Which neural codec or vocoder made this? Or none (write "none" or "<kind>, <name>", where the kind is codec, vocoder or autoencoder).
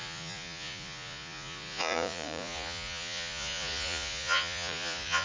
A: vocoder, Vocos